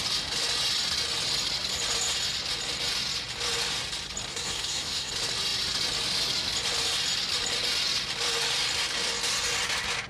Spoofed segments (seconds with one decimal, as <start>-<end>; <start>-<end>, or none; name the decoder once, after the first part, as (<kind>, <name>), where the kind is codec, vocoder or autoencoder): 4.3-5.1 (codec, SNAC)

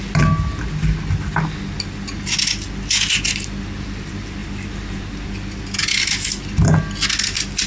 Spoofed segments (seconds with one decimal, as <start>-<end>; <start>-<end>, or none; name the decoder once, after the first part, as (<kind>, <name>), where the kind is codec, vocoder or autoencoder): none

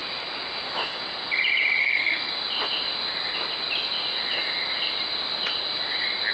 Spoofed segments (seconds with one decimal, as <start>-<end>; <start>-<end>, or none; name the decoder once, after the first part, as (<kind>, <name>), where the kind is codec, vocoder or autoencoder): 1.8-2.3 (codec, SNAC)

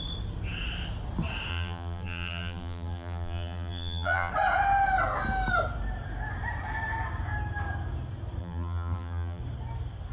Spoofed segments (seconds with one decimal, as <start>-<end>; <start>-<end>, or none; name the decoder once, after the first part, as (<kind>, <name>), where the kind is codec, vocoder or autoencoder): 1.5-4.3 (vocoder, BigVGAN v2); 8.4-9.4

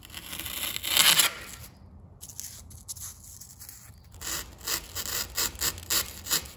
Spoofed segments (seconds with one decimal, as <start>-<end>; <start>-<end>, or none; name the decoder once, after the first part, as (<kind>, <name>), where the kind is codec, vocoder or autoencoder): none

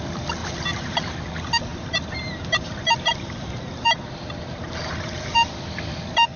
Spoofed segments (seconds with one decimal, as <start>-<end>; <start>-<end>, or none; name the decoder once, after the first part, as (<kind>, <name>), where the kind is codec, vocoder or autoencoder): 0.4-1.0 (vocoder, BigVGAN v2); 1.7-5.5